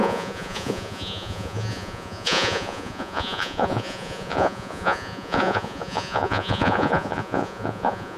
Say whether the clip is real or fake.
fake